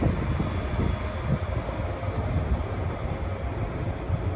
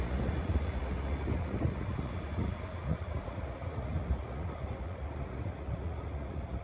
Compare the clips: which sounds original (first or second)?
first